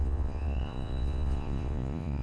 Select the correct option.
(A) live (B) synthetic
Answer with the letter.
B